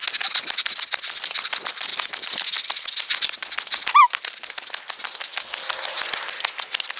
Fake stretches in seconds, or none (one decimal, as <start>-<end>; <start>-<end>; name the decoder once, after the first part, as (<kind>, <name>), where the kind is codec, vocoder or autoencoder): none